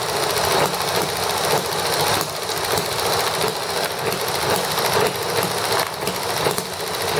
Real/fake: real